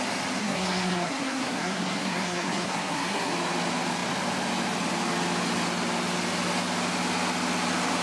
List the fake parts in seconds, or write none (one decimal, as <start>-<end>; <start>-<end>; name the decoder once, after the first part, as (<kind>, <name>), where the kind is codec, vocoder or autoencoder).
0.4-3.3 (codec, SNAC)